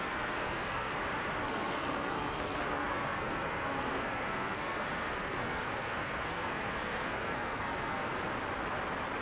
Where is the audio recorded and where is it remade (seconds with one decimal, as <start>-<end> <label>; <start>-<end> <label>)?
0.0-0.9 remade; 0.9-1.4 recorded; 1.4-8.1 remade; 8.1-9.2 recorded